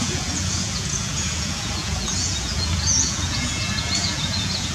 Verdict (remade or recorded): remade